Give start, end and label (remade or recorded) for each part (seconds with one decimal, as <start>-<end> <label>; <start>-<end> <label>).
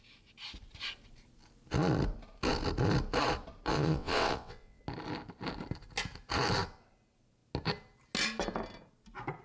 0.0-3.7 recorded; 3.7-4.8 remade; 4.8-9.4 recorded